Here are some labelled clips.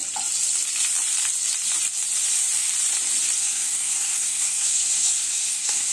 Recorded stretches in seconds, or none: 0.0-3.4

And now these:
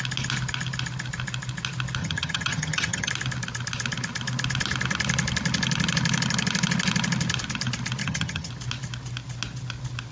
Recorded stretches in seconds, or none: 0.0-2.0; 3.1-8.0; 8.5-10.1

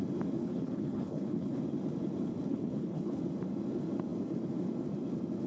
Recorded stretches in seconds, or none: 0.0-0.4; 1.6-2.5; 3.2-5.5

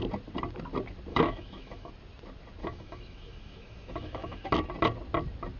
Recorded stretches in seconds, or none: 0.0-1.1; 1.9-2.6; 4.5-5.6